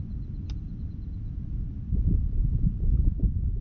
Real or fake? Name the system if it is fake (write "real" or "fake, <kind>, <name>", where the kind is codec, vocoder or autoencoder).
real